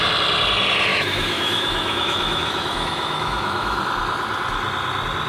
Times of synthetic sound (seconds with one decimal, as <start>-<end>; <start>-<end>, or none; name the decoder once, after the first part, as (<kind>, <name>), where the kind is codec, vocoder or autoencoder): 0.9-3.8 (autoencoder, DAC-VAE)